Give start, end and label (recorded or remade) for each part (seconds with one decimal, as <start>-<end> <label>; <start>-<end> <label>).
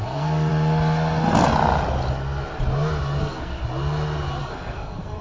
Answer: 0.0-0.5 remade; 0.5-3.2 recorded; 3.2-3.6 remade; 3.6-4.4 recorded; 4.4-5.2 remade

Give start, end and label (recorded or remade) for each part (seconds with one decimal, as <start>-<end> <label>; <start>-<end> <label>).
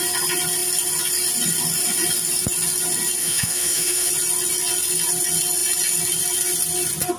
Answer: 0.0-3.2 recorded; 3.2-4.1 remade; 4.1-7.2 recorded